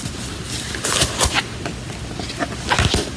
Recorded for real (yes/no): yes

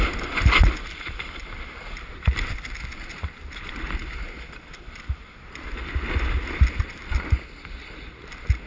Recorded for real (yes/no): yes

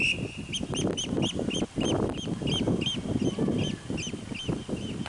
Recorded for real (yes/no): yes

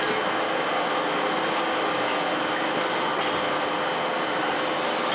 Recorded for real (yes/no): yes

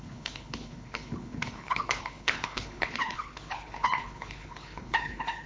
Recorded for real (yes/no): no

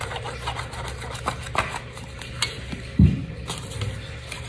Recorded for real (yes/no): yes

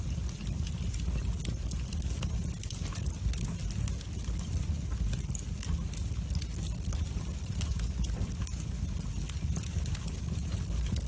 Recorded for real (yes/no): yes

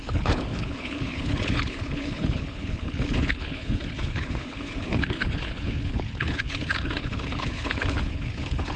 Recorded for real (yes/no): no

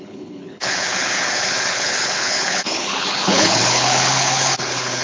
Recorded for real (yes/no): no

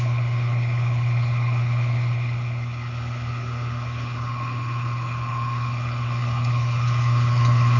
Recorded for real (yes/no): no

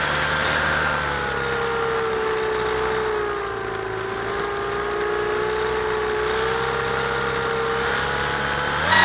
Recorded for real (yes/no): yes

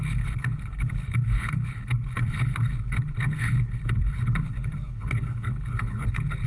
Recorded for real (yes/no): no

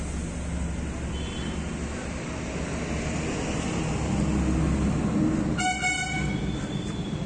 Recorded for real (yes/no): yes